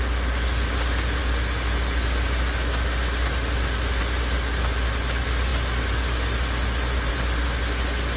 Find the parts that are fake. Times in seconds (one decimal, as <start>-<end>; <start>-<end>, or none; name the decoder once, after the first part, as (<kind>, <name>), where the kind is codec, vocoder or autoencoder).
none